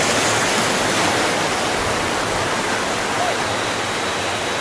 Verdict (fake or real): real